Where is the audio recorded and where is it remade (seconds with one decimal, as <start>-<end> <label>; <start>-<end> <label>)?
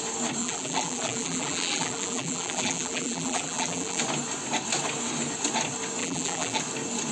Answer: 0.0-0.4 recorded; 0.4-4.0 remade; 4.0-6.0 recorded; 6.0-6.6 remade; 6.6-7.1 recorded